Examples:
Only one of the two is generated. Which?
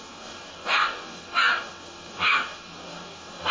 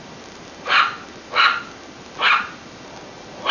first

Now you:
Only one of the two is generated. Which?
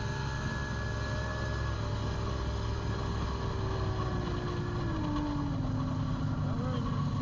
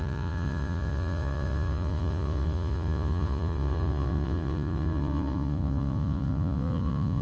second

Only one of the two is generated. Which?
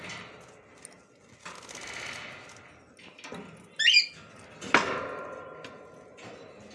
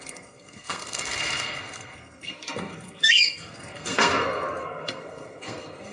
second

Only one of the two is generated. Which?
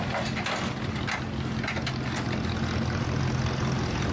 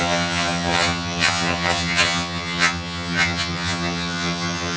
second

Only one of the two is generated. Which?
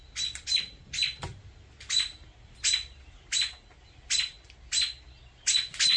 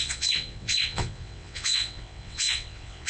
second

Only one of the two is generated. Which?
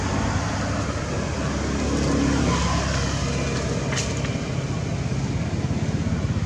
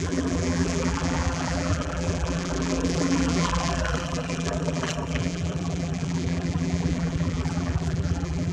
second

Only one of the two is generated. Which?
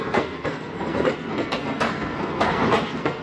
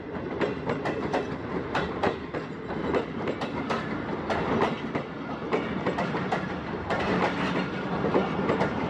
first